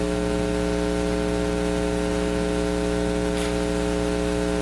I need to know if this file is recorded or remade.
recorded